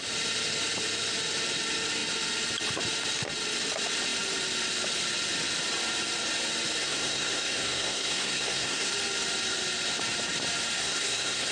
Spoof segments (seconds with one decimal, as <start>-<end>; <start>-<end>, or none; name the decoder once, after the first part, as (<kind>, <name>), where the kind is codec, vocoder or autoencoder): 6.8-8.9 (codec, SNAC); 10.8-11.5